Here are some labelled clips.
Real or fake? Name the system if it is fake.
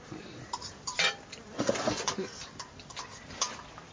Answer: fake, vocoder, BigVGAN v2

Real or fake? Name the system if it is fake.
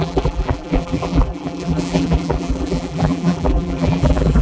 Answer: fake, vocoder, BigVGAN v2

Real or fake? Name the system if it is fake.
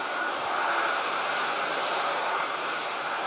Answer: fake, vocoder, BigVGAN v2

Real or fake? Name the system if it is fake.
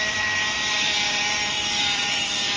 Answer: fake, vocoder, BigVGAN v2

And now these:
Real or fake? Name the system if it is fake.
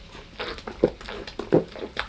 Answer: real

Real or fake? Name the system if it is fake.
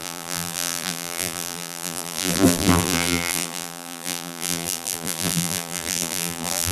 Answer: fake, vocoder, BigVGAN v2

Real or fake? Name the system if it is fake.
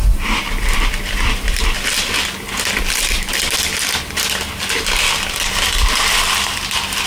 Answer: real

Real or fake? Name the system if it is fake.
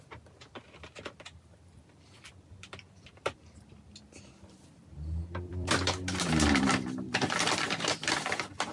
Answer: fake, vocoder, BigVGAN v2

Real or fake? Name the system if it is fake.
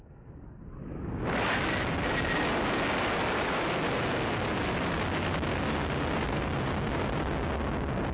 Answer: real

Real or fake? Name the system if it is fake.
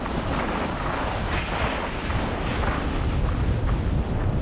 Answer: real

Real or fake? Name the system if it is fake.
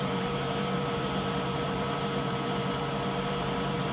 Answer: fake, vocoder, BigVGAN v2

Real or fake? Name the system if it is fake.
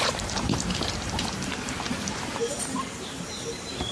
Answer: fake, vocoder, BigVGAN v2